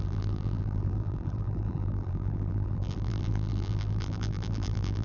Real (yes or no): no